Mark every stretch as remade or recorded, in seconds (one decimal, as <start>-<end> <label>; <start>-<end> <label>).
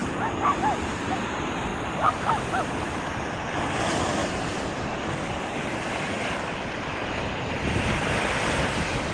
0.0-1.2 remade; 1.2-1.7 recorded; 1.7-2.7 remade; 2.7-4.2 recorded; 4.2-5.0 remade; 5.0-9.1 recorded